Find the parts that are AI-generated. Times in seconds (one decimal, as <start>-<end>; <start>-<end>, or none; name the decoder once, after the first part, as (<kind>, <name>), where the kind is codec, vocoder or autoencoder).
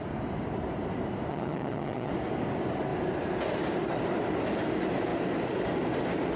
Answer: 1.3-2.1 (vocoder, HiFi-GAN)